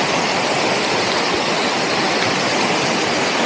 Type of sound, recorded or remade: recorded